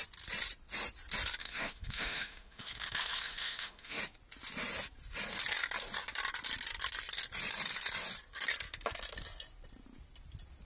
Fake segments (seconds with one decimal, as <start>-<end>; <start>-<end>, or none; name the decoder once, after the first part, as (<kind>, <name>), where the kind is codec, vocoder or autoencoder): 1.4-4.0 (autoencoder, DAC-VAE)